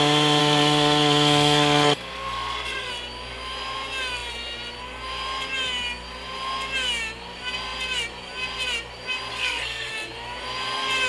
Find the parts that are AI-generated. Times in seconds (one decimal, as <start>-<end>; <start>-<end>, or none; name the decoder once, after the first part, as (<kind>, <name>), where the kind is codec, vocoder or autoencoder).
0.4-2.9 (codec, SNAC); 9.3-9.9